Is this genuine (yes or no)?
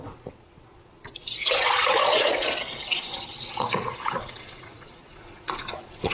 no